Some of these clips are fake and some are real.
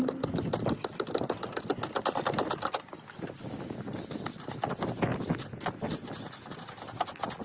real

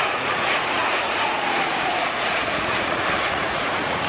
fake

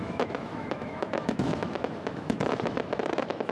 fake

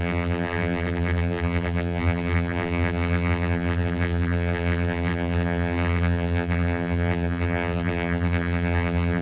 fake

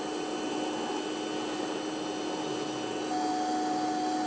real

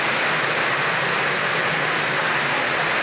real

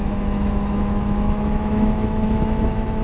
fake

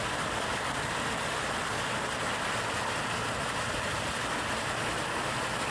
real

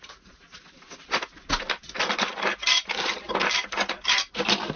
real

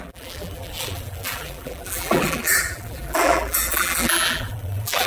fake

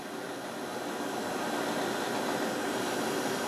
real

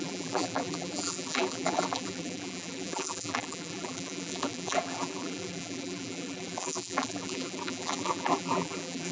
fake